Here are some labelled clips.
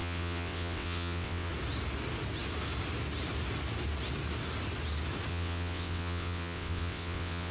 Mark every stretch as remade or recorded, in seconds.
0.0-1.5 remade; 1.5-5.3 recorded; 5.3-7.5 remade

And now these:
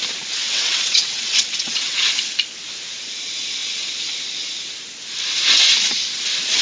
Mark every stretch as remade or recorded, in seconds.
0.0-0.4 recorded; 0.4-2.1 remade; 2.1-6.6 recorded

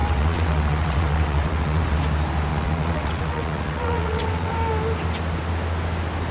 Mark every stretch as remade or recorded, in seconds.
0.0-2.0 remade; 2.0-2.5 recorded; 2.5-4.5 remade; 4.5-6.3 recorded

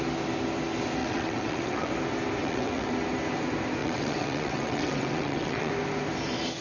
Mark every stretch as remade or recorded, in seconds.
0.0-1.0 recorded; 1.0-1.9 remade; 1.9-2.4 recorded; 2.4-2.9 remade; 2.9-3.8 recorded; 3.8-5.7 remade; 5.7-6.6 recorded